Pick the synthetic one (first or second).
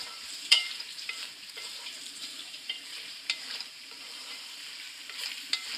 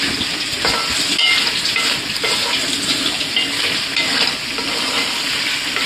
first